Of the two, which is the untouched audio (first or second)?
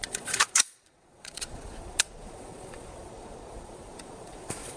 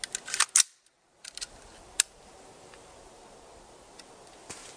second